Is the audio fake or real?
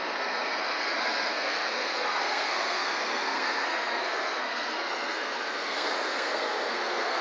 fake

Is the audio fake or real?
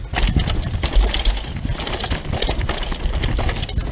real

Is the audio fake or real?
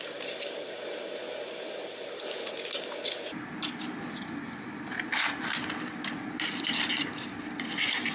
real